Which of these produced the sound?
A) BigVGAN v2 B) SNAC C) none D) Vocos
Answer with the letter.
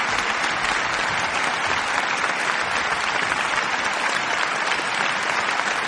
C